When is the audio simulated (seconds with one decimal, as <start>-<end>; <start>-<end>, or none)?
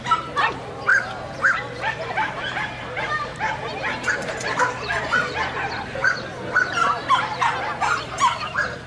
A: 0.0-7.0; 8.0-8.9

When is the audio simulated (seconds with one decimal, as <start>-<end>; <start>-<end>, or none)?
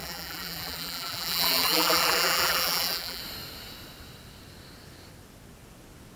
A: 0.0-3.2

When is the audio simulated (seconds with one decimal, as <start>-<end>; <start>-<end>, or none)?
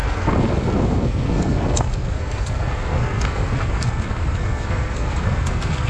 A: 0.0-5.9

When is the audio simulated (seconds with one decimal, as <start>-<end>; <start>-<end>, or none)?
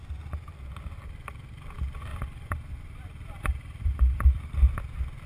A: 2.1-4.7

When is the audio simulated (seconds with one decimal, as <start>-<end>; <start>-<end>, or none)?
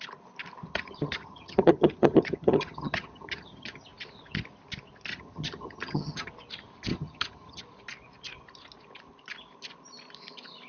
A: 0.7-3.8; 5.1-6.3; 6.9-7.6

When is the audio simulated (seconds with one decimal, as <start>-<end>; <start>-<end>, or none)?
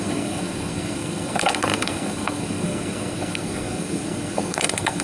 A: 0.0-5.0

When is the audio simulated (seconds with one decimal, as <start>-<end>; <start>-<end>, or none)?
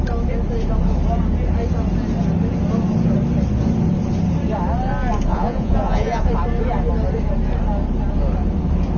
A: 5.3-6.3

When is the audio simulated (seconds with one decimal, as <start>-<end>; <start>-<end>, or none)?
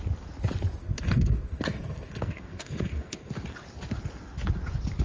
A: 0.8-3.3